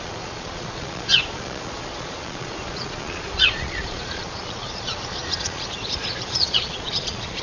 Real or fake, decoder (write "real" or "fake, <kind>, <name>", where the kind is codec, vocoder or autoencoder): fake, vocoder, Vocos